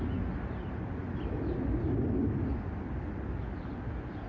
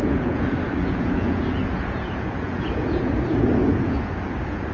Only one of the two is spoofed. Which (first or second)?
second